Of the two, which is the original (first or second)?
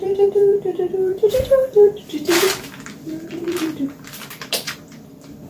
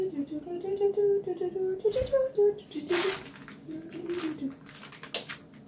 second